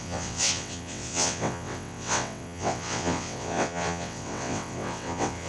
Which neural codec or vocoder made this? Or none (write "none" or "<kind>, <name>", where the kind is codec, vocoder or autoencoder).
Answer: vocoder, WaveNeXt